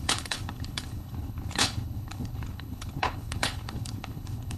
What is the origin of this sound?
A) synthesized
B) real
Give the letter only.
A